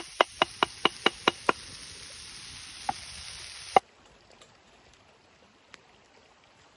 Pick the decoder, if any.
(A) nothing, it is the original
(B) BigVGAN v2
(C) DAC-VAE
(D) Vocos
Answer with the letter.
A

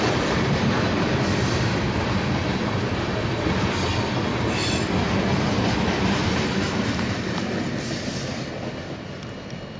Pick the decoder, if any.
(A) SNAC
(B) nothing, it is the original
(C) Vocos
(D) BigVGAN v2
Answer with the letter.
B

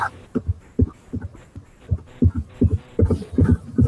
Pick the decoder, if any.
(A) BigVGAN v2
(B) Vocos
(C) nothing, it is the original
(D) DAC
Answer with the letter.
A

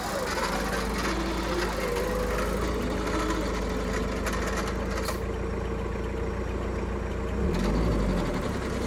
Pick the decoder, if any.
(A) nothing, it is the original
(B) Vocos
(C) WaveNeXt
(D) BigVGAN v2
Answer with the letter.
A